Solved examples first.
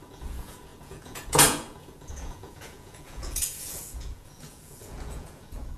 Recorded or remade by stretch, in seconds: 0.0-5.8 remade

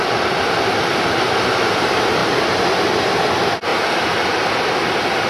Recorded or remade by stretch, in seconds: 0.0-2.2 remade; 2.2-3.0 recorded; 3.0-5.3 remade

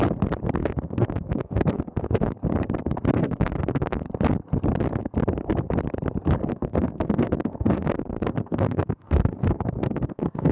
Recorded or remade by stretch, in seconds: 0.0-0.6 recorded; 0.6-2.3 remade; 2.3-3.1 recorded; 3.1-4.0 remade; 4.0-6.5 recorded; 6.5-10.5 remade